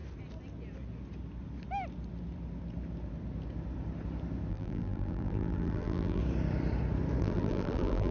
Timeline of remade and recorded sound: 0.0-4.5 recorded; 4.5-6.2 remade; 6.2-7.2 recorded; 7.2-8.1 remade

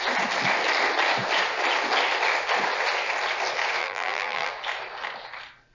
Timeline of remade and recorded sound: 0.0-3.8 recorded; 3.8-4.5 remade; 4.5-5.7 recorded

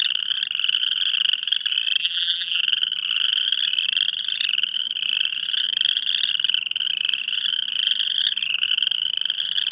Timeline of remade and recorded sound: 0.0-2.0 recorded; 2.0-2.6 remade; 2.6-9.7 recorded

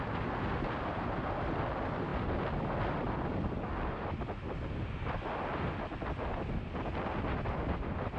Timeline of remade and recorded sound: 0.0-8.2 recorded

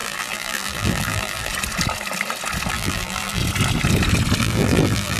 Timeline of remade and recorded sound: 0.0-1.5 remade; 1.5-2.7 recorded; 2.7-3.4 remade; 3.4-4.4 recorded; 4.4-5.2 remade